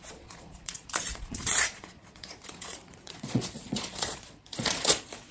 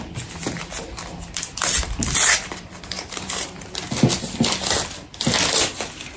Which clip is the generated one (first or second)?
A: first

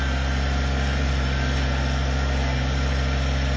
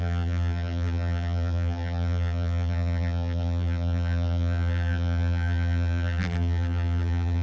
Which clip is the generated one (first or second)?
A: second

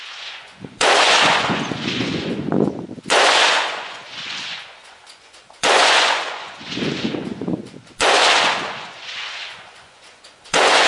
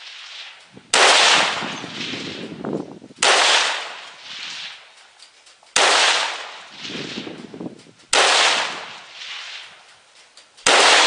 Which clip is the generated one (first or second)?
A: first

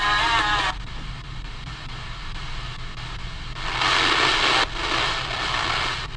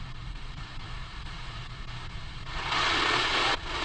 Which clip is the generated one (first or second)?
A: second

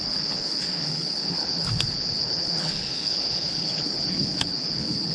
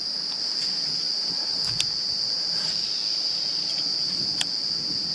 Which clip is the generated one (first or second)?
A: first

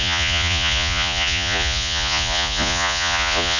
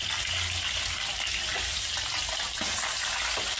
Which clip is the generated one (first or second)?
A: first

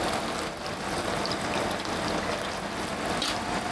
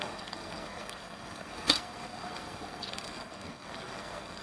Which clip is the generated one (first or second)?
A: second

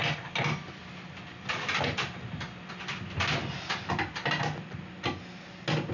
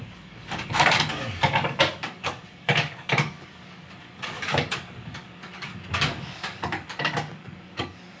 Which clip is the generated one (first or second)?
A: second